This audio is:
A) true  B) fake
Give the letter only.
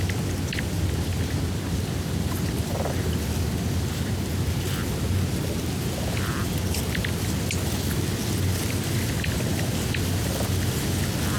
A